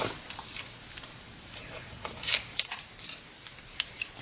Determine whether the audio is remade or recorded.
remade